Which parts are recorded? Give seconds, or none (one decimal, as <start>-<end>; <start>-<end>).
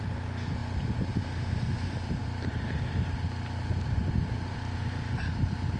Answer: 0.0-5.8